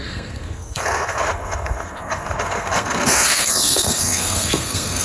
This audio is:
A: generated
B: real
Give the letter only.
A